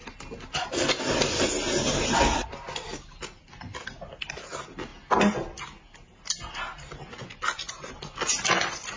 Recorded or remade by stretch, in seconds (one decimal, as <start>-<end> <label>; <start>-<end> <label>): 0.0-9.0 recorded